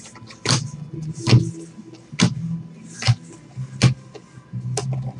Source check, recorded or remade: recorded